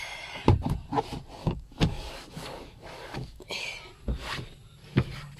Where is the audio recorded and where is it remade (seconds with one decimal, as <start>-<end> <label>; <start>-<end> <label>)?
0.0-1.4 recorded; 1.4-3.6 remade; 3.6-5.4 recorded